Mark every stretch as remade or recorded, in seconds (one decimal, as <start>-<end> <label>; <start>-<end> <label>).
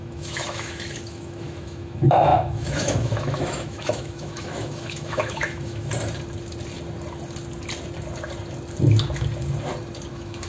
0.0-5.9 remade; 5.9-10.1 recorded; 10.1-10.5 remade